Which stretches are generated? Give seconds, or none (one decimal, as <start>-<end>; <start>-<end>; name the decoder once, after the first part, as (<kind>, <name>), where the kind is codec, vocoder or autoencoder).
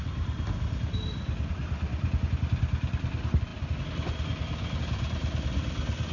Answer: 1.5-3.5 (vocoder, BigVGAN v2); 4.8-6.1